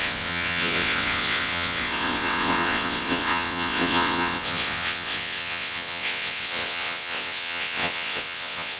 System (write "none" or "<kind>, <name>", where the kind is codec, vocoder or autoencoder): vocoder, WaveNeXt